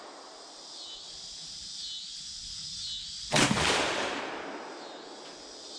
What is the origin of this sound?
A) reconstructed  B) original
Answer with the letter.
B